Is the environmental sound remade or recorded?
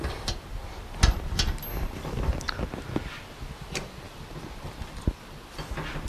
recorded